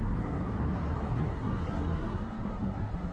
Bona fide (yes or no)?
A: no